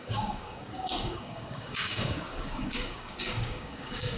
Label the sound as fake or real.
fake